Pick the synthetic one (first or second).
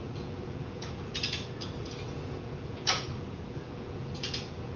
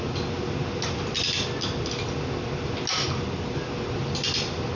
first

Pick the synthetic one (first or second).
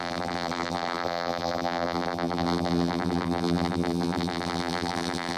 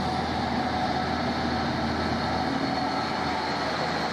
first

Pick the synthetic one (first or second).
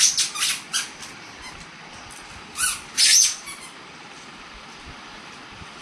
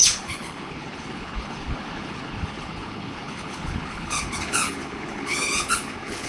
second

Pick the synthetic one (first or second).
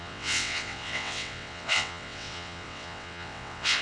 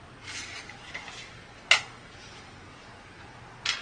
first